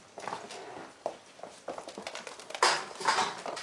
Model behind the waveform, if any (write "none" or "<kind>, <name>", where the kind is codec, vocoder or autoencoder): none